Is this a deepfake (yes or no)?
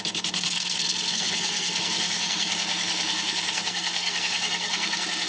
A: yes